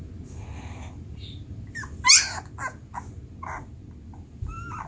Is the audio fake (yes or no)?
no